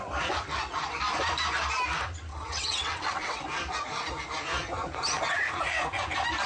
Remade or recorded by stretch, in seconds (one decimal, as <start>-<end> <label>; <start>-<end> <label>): 0.0-2.3 recorded; 2.3-3.4 remade; 3.4-6.5 recorded